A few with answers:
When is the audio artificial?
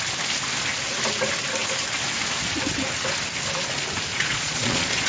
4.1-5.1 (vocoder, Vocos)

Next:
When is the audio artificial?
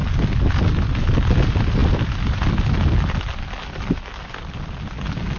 none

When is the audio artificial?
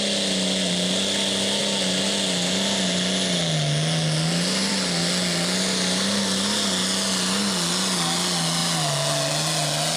none